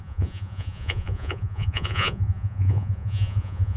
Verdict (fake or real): fake